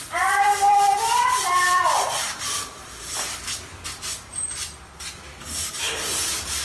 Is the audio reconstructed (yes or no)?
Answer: yes